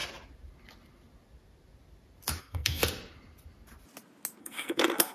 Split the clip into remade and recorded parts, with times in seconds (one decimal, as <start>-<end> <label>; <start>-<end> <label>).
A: 0.0-2.4 recorded; 2.4-2.8 remade; 2.8-4.4 recorded; 4.4-5.1 remade